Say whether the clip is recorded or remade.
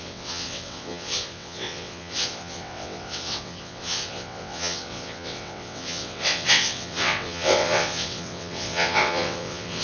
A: remade